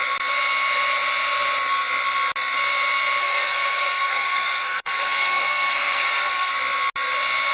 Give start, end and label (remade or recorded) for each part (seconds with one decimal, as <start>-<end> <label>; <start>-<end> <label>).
0.0-3.2 recorded; 3.2-6.5 remade; 6.5-7.5 recorded